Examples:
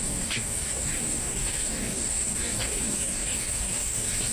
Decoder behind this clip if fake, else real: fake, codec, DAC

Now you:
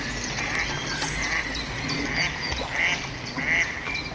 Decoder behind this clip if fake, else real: real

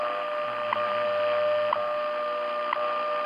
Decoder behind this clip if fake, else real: real